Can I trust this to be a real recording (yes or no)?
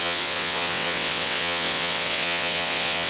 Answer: no